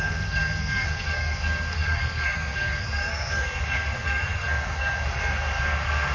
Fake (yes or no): yes